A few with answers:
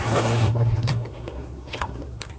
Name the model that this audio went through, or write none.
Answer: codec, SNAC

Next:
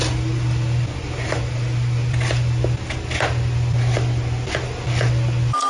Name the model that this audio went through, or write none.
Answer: none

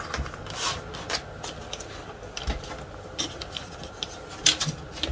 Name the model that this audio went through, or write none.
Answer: none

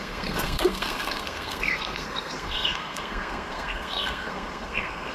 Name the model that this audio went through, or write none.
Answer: codec, SNAC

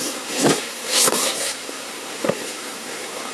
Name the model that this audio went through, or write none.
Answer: codec, SNAC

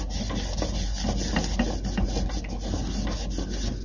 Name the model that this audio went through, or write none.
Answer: none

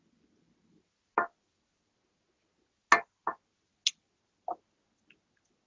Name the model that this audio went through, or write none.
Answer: none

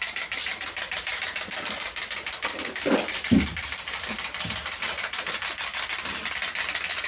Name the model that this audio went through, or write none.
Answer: none